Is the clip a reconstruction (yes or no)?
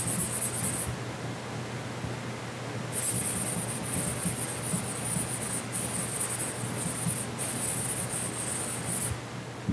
no